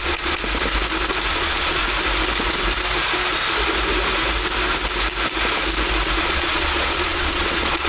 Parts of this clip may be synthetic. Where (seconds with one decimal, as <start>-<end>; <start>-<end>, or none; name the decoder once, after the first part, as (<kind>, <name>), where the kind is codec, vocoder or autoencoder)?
0.0-0.4 (vocoder, Vocos); 1.3-1.8; 6.2-7.9